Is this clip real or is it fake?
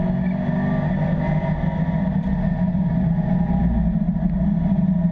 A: real